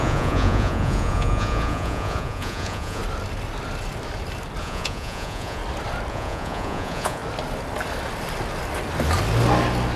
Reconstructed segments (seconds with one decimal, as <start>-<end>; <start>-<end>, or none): 0.0-3.0; 4.6-5.6; 6.1-7.2